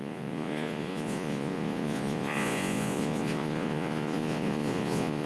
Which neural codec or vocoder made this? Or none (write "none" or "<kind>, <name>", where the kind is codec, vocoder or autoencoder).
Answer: vocoder, Vocos